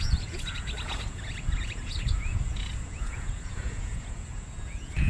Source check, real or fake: fake